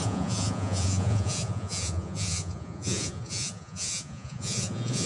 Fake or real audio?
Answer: fake